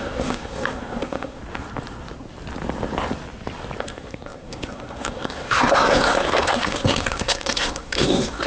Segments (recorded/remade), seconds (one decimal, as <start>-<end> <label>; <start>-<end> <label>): 0.0-1.4 remade; 1.4-3.8 recorded; 3.8-8.5 remade

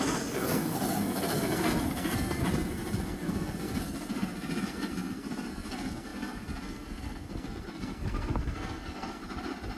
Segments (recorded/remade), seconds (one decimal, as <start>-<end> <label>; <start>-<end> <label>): 0.0-9.2 remade; 9.2-9.8 recorded

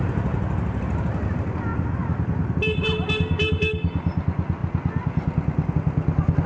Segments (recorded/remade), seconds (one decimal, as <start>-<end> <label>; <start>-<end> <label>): 0.0-6.5 recorded